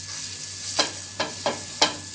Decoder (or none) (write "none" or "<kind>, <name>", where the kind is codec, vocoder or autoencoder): none